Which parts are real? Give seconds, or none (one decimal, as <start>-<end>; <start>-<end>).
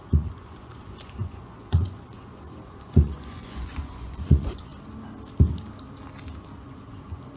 4.7-6.6